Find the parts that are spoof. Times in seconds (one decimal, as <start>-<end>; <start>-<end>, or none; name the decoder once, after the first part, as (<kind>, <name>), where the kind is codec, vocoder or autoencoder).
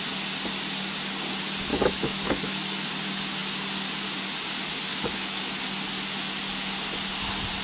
1.7-2.9 (autoencoder, DAC-VAE); 4.9-5.6